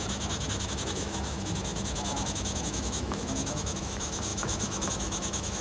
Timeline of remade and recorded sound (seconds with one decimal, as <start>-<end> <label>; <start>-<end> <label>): 0.0-5.6 remade